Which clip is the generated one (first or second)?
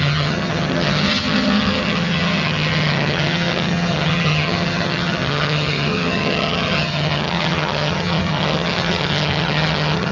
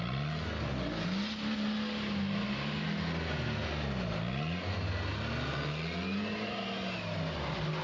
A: first